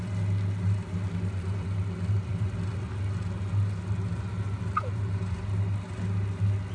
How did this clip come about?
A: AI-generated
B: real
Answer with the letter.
B